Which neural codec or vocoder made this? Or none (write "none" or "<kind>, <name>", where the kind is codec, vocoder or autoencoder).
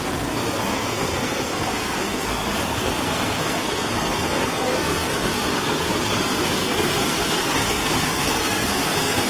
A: codec, SNAC